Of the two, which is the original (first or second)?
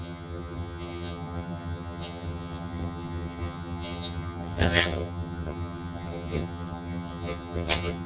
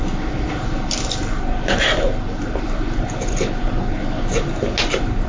second